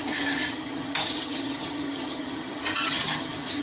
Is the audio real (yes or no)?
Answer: no